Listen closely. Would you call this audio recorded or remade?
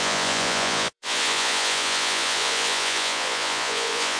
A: remade